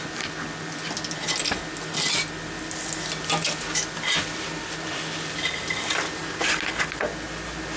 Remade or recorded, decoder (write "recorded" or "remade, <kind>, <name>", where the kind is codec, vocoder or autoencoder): recorded